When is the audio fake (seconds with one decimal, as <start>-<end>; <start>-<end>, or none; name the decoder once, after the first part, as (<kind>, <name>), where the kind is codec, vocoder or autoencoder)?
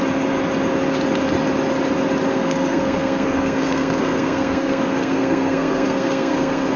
2.3-6.8 (codec, SNAC)